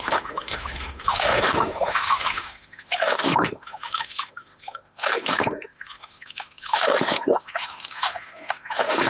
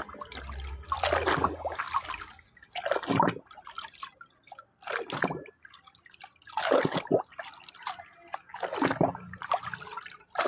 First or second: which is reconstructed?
first